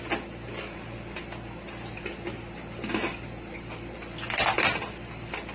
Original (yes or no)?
yes